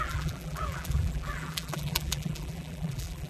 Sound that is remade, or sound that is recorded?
remade